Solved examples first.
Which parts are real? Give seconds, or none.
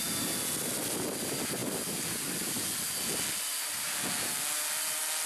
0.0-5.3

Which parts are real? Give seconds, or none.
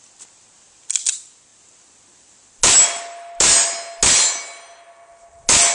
0.0-5.7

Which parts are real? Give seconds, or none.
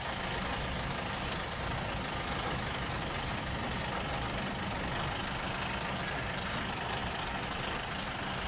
0.0-8.5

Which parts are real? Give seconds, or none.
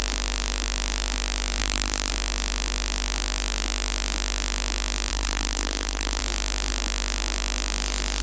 0.0-1.6; 2.1-5.1; 6.2-8.2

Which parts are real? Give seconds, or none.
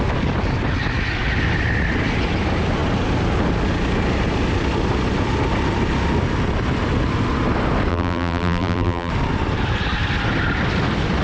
0.0-7.9; 9.1-11.2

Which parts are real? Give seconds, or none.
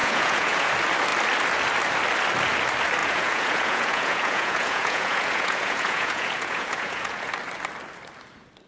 0.7-3.0; 7.3-8.7